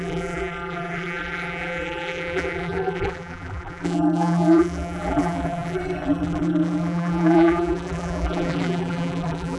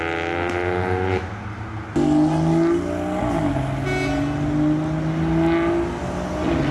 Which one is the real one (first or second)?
second